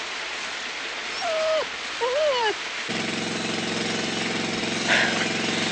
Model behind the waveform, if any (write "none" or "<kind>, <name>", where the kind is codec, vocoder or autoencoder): none